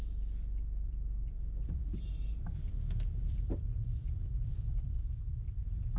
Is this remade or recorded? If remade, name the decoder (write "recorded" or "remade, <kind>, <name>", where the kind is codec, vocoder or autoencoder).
remade, vocoder, BigVGAN v2